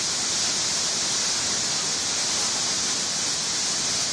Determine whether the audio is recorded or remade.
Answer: recorded